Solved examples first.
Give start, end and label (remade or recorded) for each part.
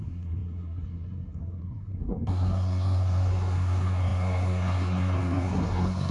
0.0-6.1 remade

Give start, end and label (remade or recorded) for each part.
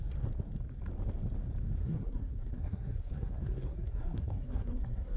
0.0-1.8 recorded; 1.8-5.2 remade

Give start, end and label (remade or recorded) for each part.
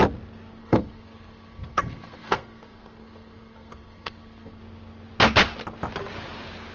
0.0-0.6 recorded; 0.6-4.6 remade; 4.6-6.7 recorded